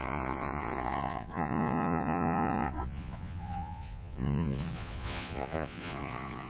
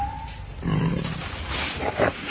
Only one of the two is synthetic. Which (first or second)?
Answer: first